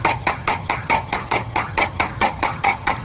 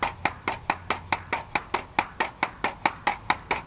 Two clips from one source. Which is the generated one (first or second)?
first